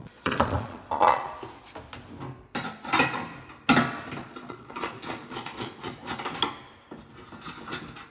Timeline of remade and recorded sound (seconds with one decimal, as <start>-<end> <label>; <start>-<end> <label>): 0.0-1.3 remade; 1.3-4.2 recorded; 4.2-5.9 remade; 5.9-8.1 recorded